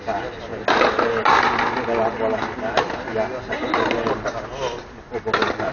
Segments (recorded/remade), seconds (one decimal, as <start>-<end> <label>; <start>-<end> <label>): 0.0-5.7 recorded